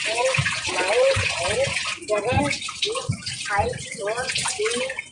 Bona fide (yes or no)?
no